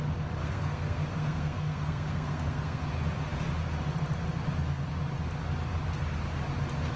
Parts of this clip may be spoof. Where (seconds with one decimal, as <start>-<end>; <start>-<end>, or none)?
0.4-2.8